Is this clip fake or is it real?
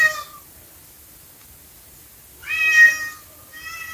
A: real